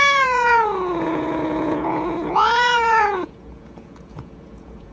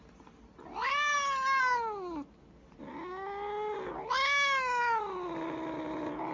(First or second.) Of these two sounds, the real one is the second